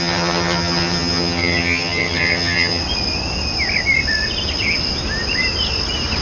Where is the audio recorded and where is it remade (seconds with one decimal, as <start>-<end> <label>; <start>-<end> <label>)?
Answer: 0.0-2.8 remade; 2.8-6.2 recorded